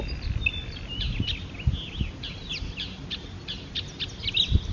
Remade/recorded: recorded